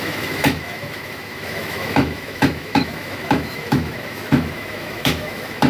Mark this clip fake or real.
fake